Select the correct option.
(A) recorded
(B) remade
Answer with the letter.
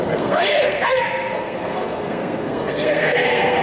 B